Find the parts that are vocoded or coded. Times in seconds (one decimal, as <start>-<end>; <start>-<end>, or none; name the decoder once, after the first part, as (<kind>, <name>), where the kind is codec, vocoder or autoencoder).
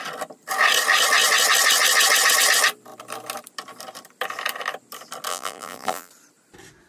5.3-6.1 (vocoder, BigVGAN v2)